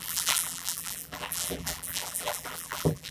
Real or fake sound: fake